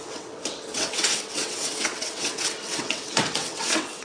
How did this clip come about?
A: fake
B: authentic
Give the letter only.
A